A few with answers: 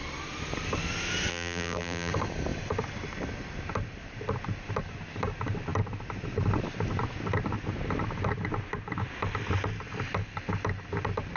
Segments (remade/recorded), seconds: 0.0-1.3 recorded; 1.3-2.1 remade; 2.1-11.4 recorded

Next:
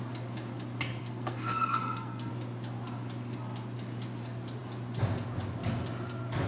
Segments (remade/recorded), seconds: 0.0-1.0 recorded; 1.0-2.3 remade; 2.3-6.5 recorded

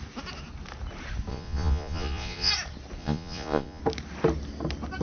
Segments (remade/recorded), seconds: 0.0-1.3 recorded; 1.3-2.5 remade; 2.5-3.0 recorded; 3.0-3.8 remade; 3.8-5.0 recorded